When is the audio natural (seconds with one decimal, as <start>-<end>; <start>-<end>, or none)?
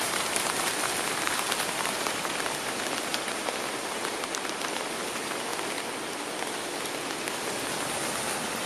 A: 5.5-8.7